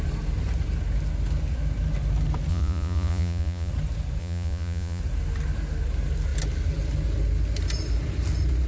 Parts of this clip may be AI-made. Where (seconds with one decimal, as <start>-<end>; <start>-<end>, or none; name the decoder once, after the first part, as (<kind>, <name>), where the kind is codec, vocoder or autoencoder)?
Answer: 2.5-3.7 (vocoder, Vocos); 4.2-5.0